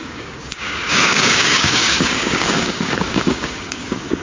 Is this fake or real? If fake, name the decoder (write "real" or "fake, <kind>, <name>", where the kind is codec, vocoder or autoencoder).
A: fake, codec, DAC